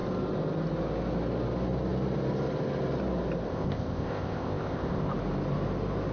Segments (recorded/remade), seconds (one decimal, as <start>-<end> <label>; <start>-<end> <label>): 0.0-3.5 recorded; 3.5-5.1 remade; 5.1-6.1 recorded